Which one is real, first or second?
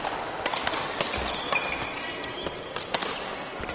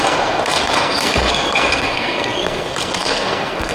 first